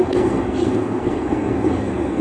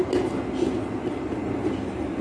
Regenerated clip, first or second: first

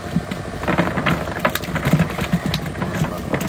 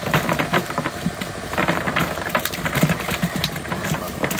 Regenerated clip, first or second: second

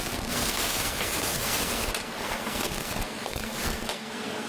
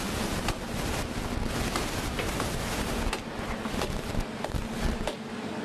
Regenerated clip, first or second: first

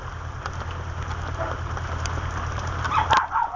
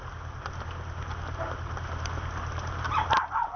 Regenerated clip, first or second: first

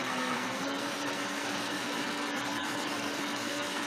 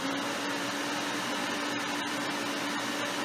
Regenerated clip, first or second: first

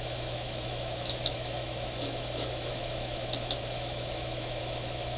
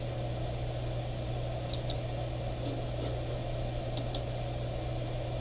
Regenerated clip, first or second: first